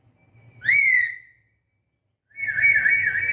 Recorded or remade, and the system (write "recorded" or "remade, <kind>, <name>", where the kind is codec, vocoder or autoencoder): recorded